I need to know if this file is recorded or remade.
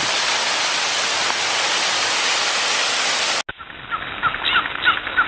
recorded